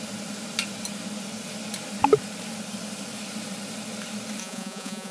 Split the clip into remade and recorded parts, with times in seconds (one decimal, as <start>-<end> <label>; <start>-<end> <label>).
0.0-4.4 recorded; 4.4-5.1 remade